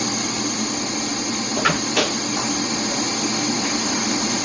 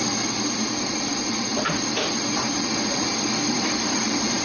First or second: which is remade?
second